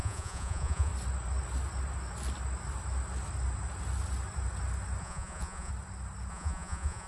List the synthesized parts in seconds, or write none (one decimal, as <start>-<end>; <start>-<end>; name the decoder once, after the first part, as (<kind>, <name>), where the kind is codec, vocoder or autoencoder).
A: 0.0-0.9 (vocoder, Vocos); 5.0-5.7; 6.3-7.1